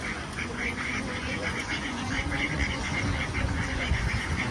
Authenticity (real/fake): fake